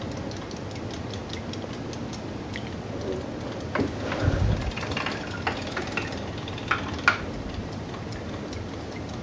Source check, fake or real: real